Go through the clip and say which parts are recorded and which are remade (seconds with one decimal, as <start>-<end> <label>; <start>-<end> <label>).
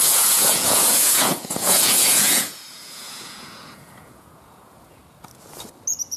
0.0-5.0 remade; 5.0-6.2 recorded